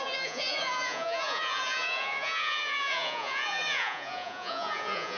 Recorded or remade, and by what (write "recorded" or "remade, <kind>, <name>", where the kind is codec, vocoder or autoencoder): remade, vocoder, Vocos